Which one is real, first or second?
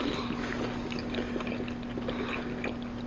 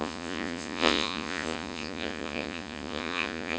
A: first